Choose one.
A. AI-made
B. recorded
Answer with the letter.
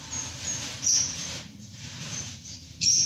A